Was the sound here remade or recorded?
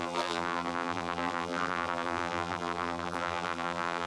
remade